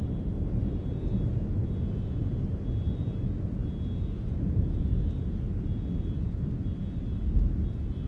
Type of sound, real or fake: real